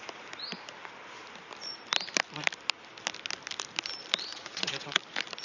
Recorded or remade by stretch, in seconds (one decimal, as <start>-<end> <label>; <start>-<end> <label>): 0.0-4.3 recorded; 4.3-5.0 remade; 5.0-5.4 recorded